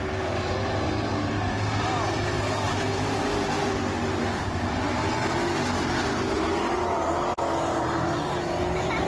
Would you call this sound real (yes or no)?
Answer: yes